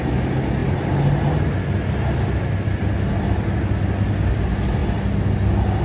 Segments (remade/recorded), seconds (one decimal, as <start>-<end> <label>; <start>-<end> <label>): 0.0-5.8 recorded